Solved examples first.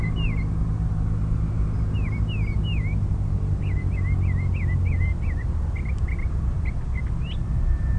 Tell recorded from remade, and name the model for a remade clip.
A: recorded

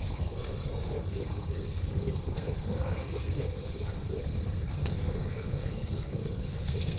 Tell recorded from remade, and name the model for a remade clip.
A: remade, codec, SNAC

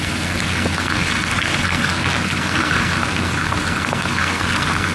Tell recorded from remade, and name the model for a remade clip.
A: remade, codec, SNAC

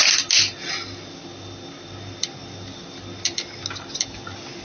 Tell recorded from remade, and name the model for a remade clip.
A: recorded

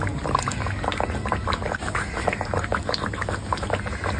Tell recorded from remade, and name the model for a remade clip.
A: recorded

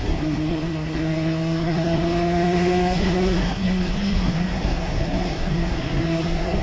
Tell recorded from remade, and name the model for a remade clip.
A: remade, codec, SNAC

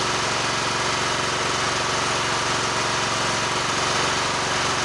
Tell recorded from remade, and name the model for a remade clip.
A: recorded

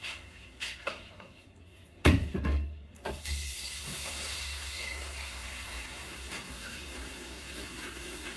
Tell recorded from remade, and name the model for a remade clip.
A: remade, codec, SNAC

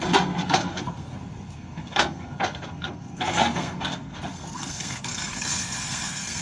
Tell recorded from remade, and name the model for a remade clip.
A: remade, codec, SNAC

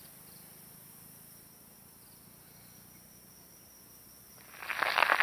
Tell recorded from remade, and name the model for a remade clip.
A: recorded